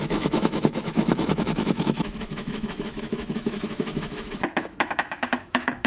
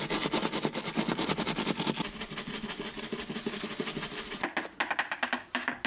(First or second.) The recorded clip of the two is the second